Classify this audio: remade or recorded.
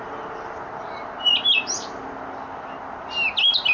recorded